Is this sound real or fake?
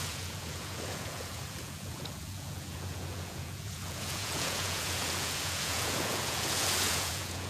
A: fake